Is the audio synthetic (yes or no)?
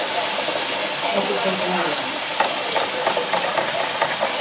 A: yes